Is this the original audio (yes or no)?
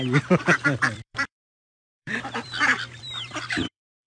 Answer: no